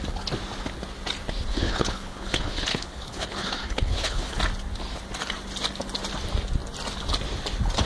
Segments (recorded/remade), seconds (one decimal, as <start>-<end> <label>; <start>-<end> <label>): 0.0-1.5 recorded; 1.5-4.4 remade; 4.4-7.9 recorded